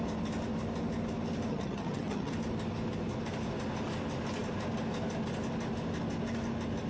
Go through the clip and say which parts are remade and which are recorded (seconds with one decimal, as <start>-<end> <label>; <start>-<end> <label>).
0.0-1.5 recorded; 1.5-2.3 remade; 2.3-6.9 recorded